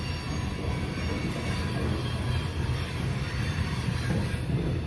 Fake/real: real